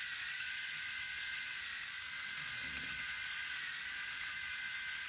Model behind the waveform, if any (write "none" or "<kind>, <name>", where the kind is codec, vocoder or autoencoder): none